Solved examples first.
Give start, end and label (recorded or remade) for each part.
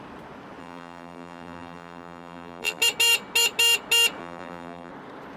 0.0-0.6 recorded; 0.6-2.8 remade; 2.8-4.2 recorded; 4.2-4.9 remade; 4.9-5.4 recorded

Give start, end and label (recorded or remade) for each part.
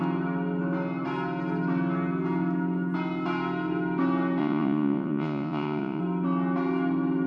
0.0-4.4 recorded; 4.4-6.0 remade; 6.0-7.3 recorded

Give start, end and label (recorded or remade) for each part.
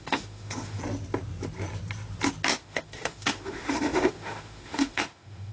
0.0-0.8 remade; 0.8-2.5 recorded; 2.5-5.5 remade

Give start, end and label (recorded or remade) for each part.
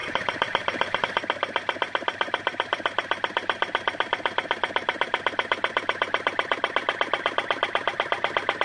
0.0-1.0 remade; 1.0-8.6 recorded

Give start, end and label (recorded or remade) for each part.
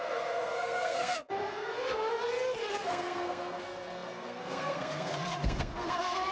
0.0-2.1 remade; 2.1-2.7 recorded; 2.7-6.3 remade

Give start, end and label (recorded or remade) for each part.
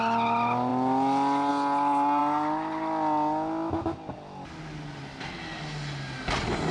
0.0-6.7 recorded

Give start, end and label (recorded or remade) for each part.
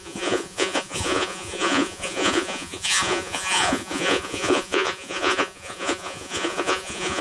0.0-7.2 remade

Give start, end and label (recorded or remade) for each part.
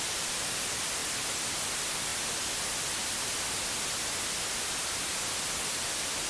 0.0-1.0 remade; 1.0-1.5 recorded; 1.5-2.1 remade; 2.1-6.3 recorded